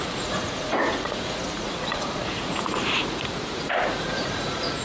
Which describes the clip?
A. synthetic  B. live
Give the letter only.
A